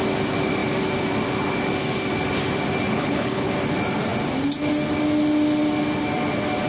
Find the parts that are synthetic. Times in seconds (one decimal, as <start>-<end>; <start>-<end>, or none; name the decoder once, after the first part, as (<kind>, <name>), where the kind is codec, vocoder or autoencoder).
2.9-3.5 (codec, HILCodec)